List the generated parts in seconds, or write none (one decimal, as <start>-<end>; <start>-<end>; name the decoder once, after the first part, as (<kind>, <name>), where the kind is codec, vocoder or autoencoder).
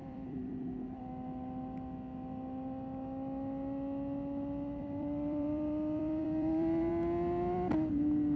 0.0-0.5 (vocoder, BigVGAN v2); 4.8-6.9